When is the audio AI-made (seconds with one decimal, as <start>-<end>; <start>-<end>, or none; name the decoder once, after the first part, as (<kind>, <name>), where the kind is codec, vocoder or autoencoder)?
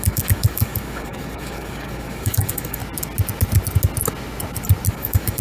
0.0-2.8 (codec, DAC); 4.9-5.4